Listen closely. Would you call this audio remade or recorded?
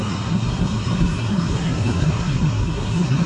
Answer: remade